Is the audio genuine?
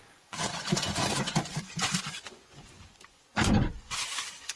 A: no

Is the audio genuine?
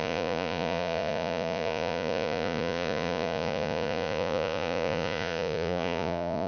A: no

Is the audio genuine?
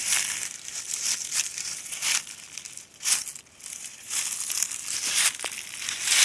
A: yes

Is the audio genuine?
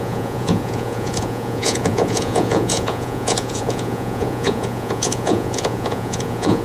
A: no